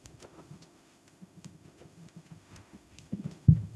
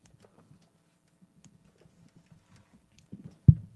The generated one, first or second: first